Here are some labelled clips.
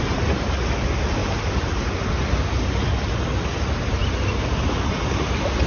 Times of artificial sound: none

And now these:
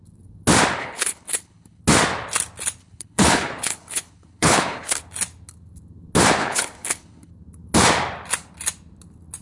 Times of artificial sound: 0.8-1.8; 2.8-5.0; 6.4-7.3